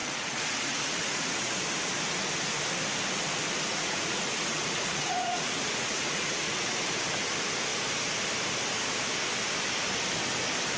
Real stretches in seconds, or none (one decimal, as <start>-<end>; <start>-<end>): 1.6-3.7; 6.8-10.8